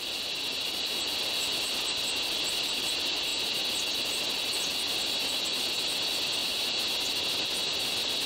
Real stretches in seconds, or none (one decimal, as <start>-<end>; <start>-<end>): 3.3-4.1; 6.4-7.1